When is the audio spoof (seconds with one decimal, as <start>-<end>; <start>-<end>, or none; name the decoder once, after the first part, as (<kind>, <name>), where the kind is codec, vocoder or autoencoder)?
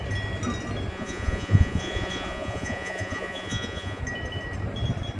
0.9-4.0 (vocoder, Vocos)